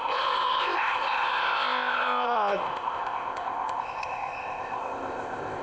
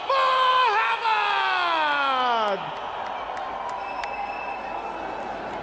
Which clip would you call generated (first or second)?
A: first